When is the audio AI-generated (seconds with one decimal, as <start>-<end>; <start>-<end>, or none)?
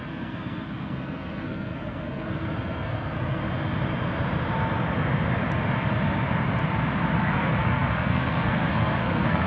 0.0-3.4; 7.2-9.5